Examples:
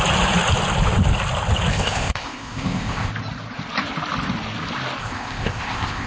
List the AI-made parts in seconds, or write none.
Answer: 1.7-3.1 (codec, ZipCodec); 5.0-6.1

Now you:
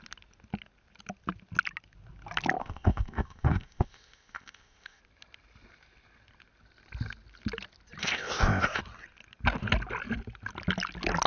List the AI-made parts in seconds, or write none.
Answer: 2.6-5.0 (codec, ZipCodec); 8.0-8.8

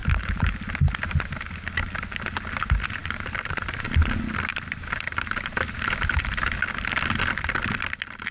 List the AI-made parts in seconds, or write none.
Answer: none

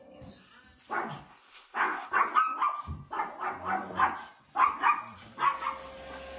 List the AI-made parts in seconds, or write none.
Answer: 1.3-2.1 (codec, ZipCodec)

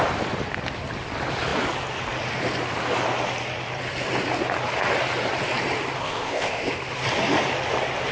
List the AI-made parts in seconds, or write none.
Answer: 6.0-6.7 (codec, ZipCodec)

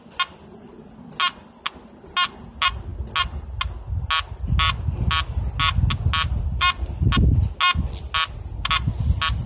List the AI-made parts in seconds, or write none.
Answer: none

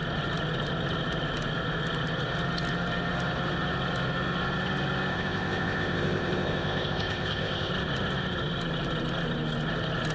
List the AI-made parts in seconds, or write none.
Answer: 5.1-7.7 (codec, ZipCodec)